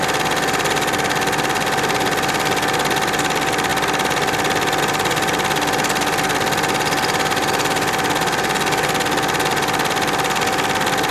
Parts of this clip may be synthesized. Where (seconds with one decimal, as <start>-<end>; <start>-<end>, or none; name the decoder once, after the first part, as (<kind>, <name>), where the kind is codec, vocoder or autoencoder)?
none